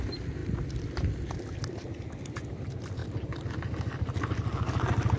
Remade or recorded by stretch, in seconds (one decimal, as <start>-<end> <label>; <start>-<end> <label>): 0.0-5.2 recorded